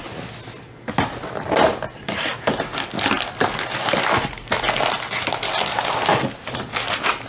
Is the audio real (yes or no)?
yes